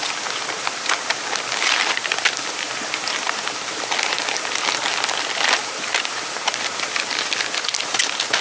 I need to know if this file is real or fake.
real